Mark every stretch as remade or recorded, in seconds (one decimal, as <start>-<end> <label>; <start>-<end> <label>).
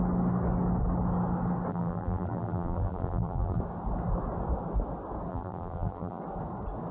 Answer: 0.0-1.7 recorded; 1.7-3.6 remade; 3.6-5.3 recorded; 5.3-6.2 remade; 6.2-6.9 recorded